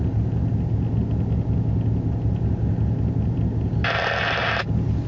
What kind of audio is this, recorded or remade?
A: recorded